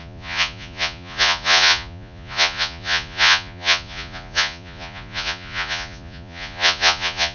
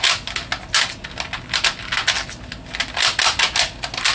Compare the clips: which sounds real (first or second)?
second